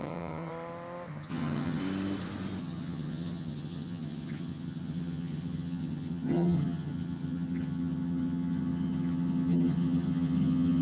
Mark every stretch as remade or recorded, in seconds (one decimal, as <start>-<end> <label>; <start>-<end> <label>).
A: 0.0-0.5 remade; 0.5-1.1 recorded; 1.1-1.8 remade; 1.8-2.6 recorded; 2.6-10.8 remade